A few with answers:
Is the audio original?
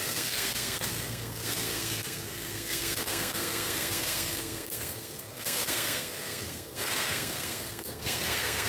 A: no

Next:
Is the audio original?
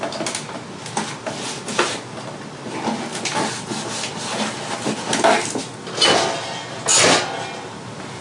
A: yes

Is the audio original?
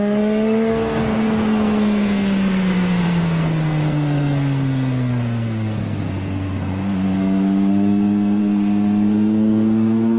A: no